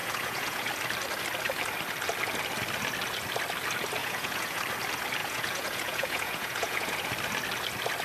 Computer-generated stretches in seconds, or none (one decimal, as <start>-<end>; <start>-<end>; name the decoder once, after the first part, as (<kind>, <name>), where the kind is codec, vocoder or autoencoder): 0.0-0.7 (vocoder, Vocos); 4.0-4.6; 5.2-7.1